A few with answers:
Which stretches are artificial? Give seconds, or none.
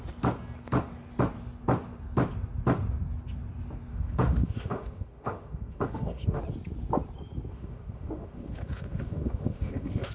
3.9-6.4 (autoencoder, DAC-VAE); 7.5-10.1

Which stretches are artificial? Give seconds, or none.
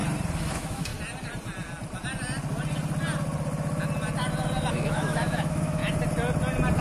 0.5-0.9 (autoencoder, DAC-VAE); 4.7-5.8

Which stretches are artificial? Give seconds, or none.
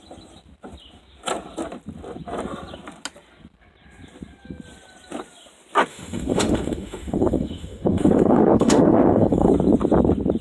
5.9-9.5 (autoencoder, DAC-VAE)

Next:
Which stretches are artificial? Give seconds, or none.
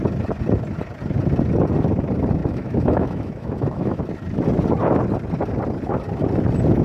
2.4-4.0 (autoencoder, DAC-VAE)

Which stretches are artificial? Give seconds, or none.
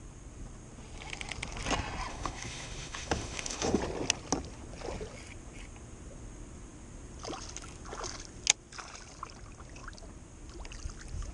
2.1-3.8 (autoencoder, DAC-VAE)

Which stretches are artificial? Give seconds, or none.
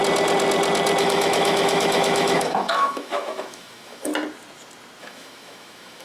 1.0-4.1 (autoencoder, DAC-VAE); 5.0-6.0